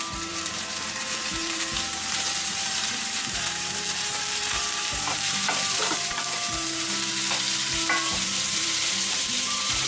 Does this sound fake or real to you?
fake